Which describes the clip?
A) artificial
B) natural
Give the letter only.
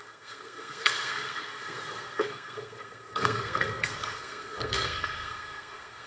A